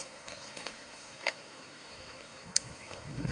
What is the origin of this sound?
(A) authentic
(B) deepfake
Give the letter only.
B